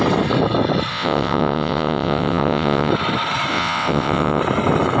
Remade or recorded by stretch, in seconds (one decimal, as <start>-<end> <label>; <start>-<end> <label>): 0.0-0.9 recorded; 0.9-2.9 remade; 2.9-3.5 recorded; 3.5-4.4 remade; 4.4-5.0 recorded